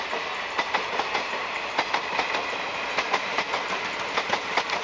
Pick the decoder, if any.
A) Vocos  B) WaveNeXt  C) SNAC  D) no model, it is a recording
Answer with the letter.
D